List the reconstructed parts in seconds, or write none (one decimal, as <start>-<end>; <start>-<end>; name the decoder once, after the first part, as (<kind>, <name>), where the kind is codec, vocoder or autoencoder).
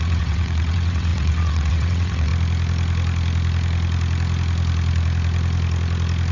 0.0-2.3 (vocoder, WaveNeXt)